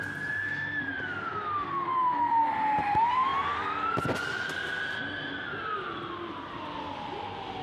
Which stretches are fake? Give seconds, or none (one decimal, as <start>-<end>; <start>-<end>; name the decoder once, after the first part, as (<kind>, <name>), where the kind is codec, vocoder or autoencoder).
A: none